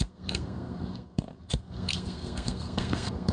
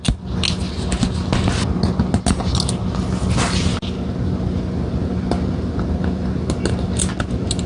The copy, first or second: first